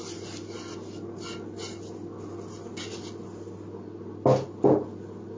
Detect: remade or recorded recorded